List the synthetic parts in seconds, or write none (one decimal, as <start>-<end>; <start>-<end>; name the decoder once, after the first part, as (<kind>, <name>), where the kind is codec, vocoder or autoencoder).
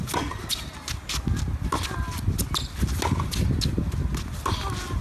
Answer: none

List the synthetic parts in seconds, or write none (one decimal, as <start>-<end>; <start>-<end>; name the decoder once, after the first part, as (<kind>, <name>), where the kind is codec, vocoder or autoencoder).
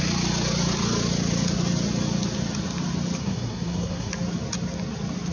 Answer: 3.2-4.1 (codec, SNAC)